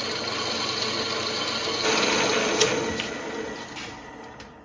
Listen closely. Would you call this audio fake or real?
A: real